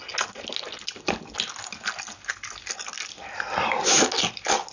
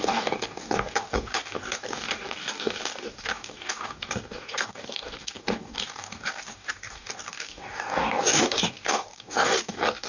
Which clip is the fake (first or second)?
second